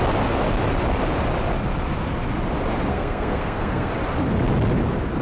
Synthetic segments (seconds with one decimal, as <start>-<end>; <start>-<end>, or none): 2.9-3.9